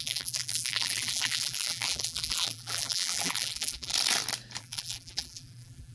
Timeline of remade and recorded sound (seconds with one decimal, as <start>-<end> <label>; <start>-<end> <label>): 0.0-3.9 remade; 3.9-4.6 recorded; 4.6-5.9 remade